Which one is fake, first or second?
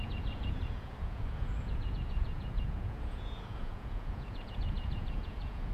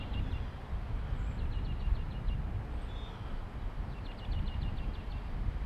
first